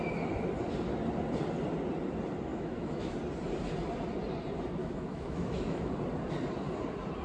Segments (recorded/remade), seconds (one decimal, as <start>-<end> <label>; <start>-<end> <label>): 0.0-2.5 recorded; 2.5-3.1 remade; 3.1-4.8 recorded; 4.8-5.9 remade; 5.9-7.2 recorded